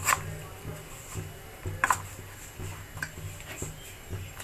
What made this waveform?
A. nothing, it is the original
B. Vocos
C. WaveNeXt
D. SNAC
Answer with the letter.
A